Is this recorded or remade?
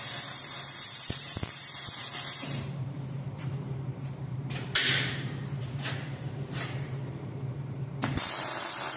remade